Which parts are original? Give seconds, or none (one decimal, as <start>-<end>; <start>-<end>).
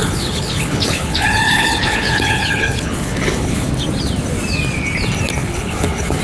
3.7-5.4